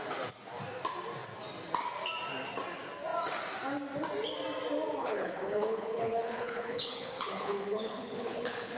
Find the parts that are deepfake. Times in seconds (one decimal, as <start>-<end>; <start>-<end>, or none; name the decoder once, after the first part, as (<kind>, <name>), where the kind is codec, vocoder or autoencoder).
5.0-8.8 (codec, HILCodec)